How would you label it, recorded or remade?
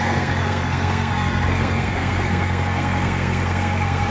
remade